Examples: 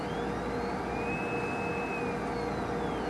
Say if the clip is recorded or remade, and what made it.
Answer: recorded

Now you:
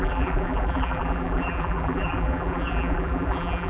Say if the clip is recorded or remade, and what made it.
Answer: remade, vocoder, BigVGAN v2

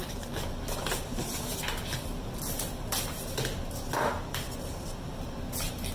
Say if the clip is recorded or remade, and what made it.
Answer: recorded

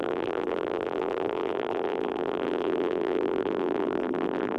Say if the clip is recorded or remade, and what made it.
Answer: remade, vocoder, BigVGAN v2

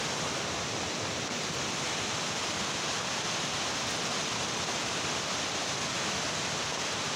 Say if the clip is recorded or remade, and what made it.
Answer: recorded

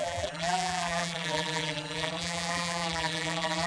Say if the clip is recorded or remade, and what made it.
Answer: remade, vocoder, BigVGAN v2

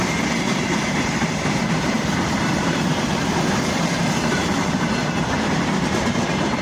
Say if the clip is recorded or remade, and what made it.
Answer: remade, vocoder, BigVGAN v2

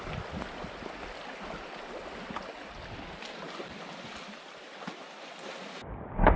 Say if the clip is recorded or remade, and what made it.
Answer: recorded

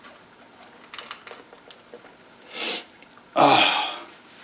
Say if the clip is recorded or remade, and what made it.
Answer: recorded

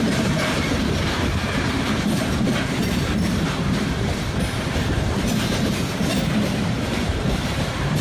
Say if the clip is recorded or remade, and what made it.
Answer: remade, vocoder, BigVGAN v2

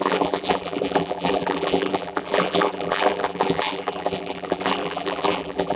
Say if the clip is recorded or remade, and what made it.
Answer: remade, vocoder, BigVGAN v2